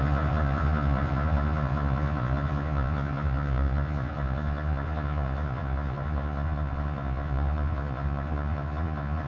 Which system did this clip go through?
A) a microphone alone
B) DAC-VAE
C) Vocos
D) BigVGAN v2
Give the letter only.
C